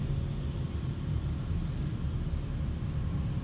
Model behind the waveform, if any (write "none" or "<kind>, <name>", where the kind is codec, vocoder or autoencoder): none